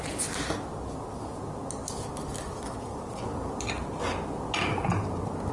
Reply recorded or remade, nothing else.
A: recorded